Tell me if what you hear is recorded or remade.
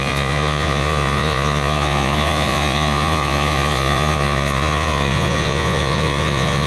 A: remade